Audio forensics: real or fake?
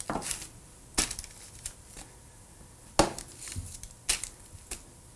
real